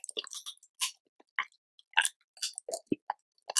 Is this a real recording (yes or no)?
yes